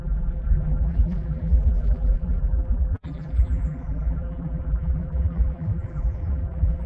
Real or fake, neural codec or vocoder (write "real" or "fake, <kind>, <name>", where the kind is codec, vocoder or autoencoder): fake, vocoder, BigVGAN v2